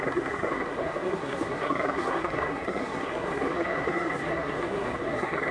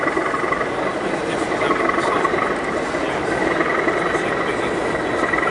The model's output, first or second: first